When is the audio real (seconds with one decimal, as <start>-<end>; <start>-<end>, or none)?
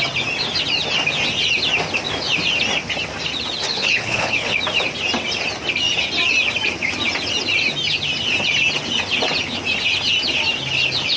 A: 0.0-3.7; 4.6-11.2